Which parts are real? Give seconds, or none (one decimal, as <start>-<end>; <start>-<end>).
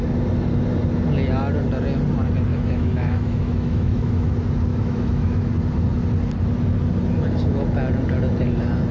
0.0-2.5; 4.3-4.7; 5.5-8.9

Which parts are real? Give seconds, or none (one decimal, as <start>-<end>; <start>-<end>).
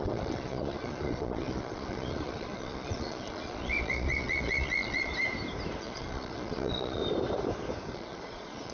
5.1-5.8; 7.0-7.9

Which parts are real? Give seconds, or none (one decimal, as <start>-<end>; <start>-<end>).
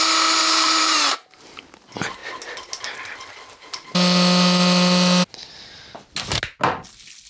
0.0-0.4; 1.6-7.3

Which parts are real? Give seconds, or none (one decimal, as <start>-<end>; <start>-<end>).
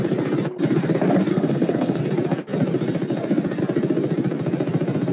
0.0-1.3; 2.0-5.1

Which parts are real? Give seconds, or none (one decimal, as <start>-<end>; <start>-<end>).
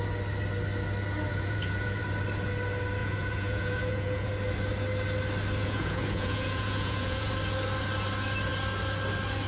0.0-1.3; 2.0-3.0; 4.3-5.6; 7.3-9.5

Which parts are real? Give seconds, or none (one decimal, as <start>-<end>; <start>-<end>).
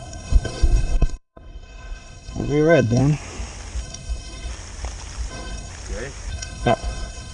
3.0-3.8; 4.5-5.3; 5.7-6.3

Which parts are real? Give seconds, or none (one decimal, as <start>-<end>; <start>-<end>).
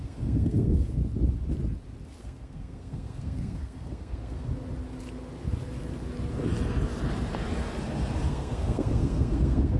1.0-2.2; 4.5-8.3